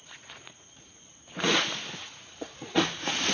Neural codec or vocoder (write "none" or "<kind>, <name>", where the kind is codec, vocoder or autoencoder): vocoder, Vocos